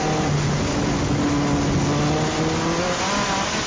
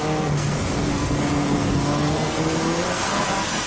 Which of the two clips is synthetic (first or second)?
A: second